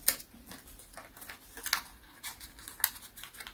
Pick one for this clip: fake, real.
real